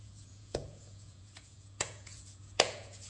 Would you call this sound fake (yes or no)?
yes